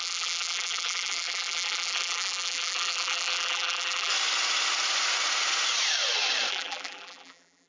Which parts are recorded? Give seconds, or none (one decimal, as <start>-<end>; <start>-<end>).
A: 4.1-6.5